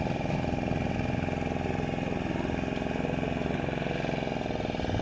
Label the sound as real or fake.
real